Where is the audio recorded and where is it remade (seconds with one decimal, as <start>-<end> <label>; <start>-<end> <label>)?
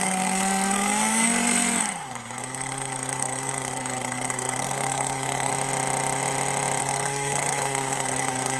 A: 0.0-5.5 remade; 5.5-6.8 recorded; 6.8-8.6 remade